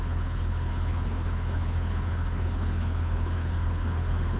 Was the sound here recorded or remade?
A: remade